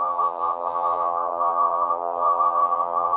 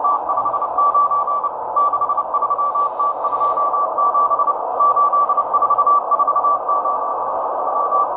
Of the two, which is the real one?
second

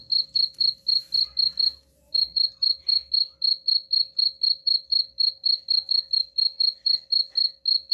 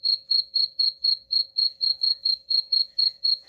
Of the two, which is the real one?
first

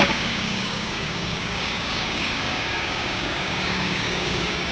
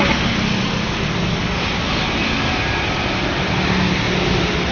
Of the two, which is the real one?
second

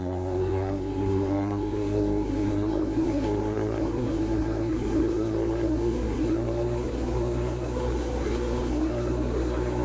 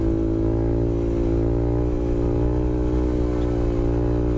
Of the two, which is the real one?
second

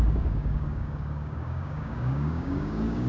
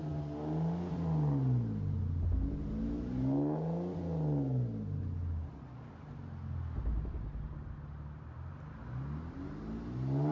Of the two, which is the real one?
second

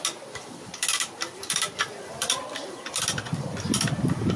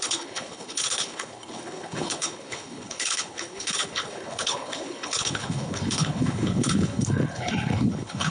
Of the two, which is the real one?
first